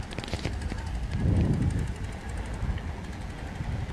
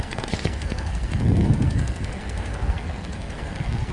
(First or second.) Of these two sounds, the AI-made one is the second